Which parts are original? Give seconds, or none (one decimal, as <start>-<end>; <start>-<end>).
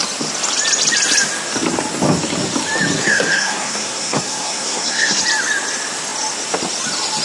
0.0-3.0; 5.2-7.2